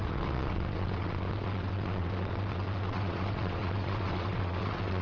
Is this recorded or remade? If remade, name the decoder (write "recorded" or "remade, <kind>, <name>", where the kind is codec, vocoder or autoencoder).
remade, vocoder, WaveNeXt